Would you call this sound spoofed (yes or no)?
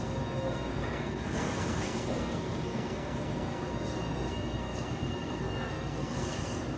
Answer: yes